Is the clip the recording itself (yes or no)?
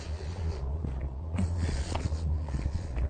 no